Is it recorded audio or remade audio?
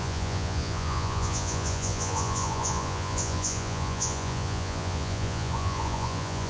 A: remade